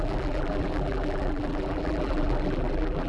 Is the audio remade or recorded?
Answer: remade